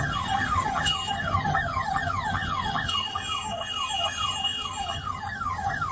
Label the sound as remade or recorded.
remade